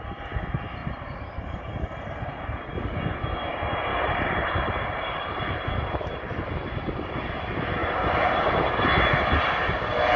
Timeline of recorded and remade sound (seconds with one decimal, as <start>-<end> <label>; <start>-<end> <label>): 0.0-0.8 recorded; 0.8-1.7 remade; 1.7-3.9 recorded; 3.9-6.5 remade; 6.5-7.8 recorded; 7.8-8.4 remade; 8.4-10.2 recorded